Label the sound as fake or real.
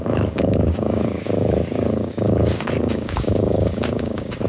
fake